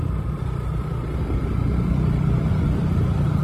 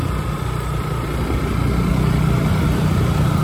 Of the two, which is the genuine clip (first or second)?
second